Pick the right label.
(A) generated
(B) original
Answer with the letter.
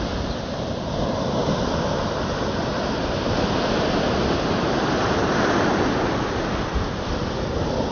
B